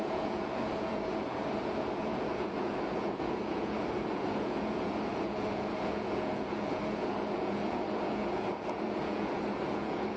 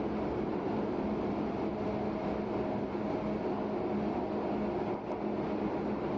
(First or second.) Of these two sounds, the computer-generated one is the first